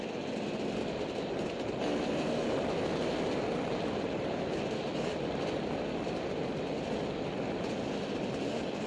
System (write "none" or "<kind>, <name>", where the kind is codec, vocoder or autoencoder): none